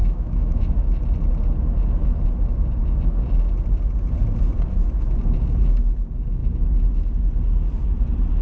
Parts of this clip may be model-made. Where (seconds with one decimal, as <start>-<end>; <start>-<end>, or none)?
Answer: 0.0-0.7